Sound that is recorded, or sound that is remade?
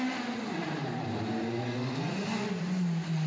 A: recorded